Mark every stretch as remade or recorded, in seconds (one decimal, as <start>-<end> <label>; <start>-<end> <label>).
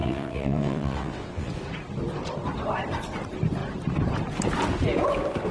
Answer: 0.0-1.5 remade; 1.5-5.5 recorded